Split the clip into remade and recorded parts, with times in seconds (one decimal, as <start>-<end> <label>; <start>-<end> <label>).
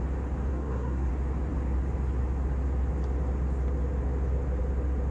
0.0-0.5 recorded; 0.5-1.1 remade; 1.1-5.1 recorded